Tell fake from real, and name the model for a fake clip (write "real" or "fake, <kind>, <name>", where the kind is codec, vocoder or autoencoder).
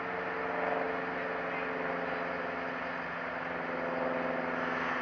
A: real